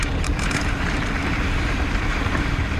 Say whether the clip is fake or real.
fake